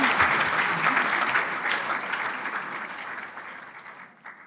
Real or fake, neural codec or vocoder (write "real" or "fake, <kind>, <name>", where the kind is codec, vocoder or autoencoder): real